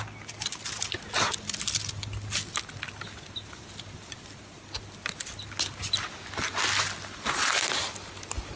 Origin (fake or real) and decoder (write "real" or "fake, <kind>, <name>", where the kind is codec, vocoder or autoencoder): real